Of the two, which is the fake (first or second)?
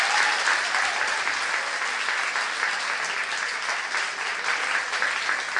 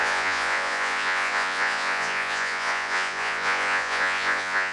second